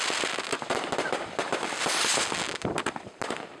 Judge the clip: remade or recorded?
recorded